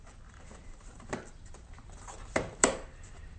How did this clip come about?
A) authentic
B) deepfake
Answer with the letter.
B